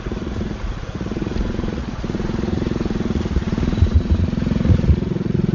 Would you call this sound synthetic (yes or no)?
yes